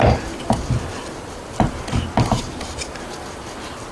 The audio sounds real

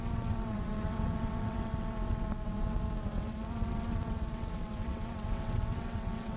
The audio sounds fake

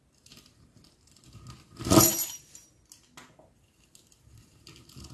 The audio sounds real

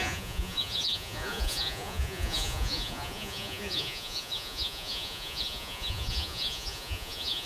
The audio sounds fake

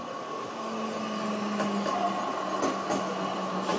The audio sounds real